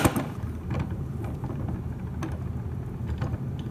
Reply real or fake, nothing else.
real